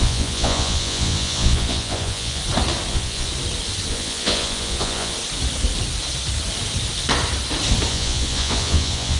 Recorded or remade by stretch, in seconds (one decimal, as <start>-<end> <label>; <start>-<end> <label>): 0.0-2.4 remade; 2.4-2.9 recorded; 2.9-3.3 remade; 3.3-3.9 recorded; 3.9-5.1 remade; 5.1-7.9 recorded; 7.9-9.2 remade